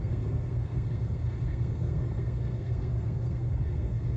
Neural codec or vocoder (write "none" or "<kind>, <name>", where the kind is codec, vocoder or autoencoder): codec, SNAC